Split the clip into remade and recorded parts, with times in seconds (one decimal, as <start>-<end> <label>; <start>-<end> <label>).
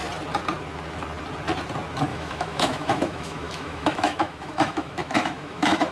0.0-2.1 recorded; 2.1-5.9 remade